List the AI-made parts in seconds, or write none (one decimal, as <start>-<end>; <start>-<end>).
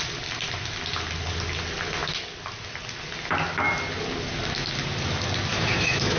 5.5-6.2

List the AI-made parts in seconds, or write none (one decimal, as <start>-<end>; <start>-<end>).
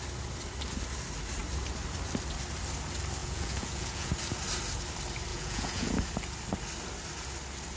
3.2-4.1; 5.3-5.9